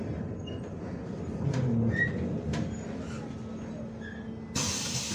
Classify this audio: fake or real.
real